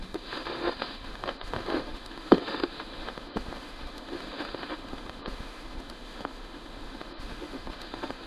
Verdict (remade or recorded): remade